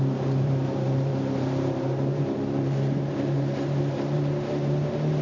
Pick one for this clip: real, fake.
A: fake